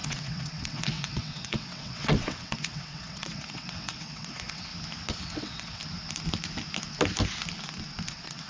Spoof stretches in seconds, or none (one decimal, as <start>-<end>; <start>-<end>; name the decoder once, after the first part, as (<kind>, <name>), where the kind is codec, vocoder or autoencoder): 0.0-4.7 (vocoder, WaveNeXt); 5.2-5.8; 8.1-8.5